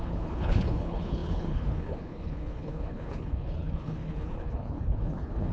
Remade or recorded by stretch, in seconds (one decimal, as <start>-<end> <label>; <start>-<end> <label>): 0.0-5.5 remade